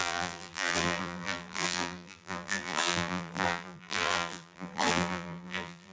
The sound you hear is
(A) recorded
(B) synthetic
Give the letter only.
B